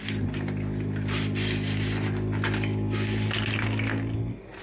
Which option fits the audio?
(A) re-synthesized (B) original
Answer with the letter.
B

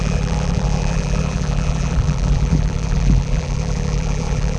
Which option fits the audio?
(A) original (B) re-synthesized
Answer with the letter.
B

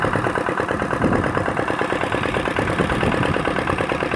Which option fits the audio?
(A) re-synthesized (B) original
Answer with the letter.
A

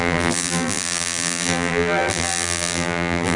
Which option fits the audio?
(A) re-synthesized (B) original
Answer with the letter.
A